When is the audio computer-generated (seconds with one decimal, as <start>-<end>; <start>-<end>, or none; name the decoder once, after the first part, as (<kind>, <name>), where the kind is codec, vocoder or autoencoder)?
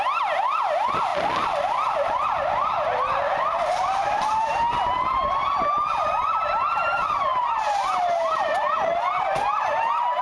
none